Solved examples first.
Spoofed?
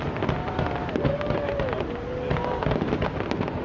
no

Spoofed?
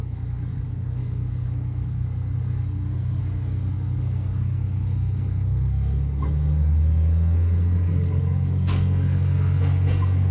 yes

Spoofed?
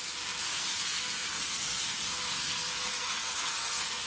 yes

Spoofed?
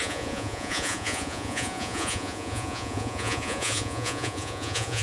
yes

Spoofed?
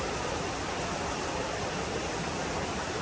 no